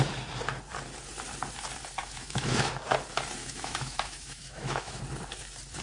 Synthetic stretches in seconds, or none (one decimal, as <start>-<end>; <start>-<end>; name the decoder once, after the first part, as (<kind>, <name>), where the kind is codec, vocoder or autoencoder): 2.0-2.7 (autoencoder, DAC-VAE); 3.4-5.0

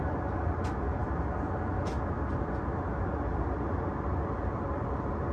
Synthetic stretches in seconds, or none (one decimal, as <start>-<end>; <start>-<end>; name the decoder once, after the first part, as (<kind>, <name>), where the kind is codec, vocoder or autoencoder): none